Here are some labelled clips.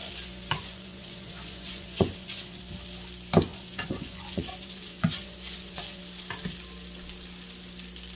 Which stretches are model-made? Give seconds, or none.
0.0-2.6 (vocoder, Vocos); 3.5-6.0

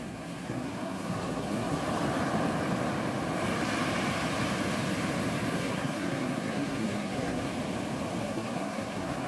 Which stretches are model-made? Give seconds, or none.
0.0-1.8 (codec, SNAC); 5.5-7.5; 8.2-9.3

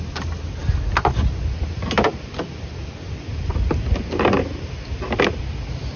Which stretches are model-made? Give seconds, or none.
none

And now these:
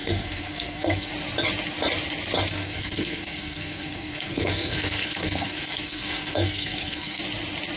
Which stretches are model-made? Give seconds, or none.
0.0-1.1 (codec, SNAC); 2.5-7.2